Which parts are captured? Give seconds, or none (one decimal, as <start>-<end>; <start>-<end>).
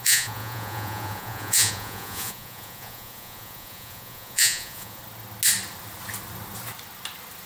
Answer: 5.0-7.5